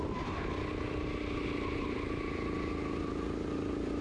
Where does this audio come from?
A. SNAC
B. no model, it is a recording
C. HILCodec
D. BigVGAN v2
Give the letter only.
B